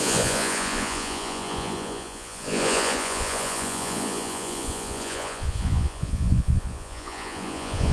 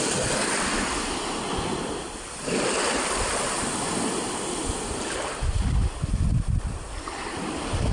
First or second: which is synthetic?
first